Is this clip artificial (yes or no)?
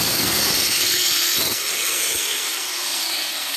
yes